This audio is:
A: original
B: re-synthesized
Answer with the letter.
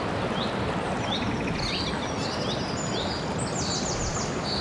A